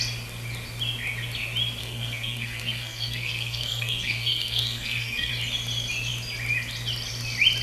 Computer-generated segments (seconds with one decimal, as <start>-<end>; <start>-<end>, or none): 1.8-5.3